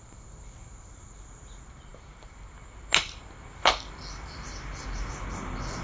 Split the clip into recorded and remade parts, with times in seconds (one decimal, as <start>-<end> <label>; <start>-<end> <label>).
0.0-1.9 remade; 1.9-5.3 recorded; 5.3-5.8 remade